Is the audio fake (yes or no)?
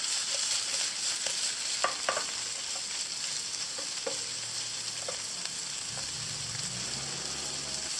no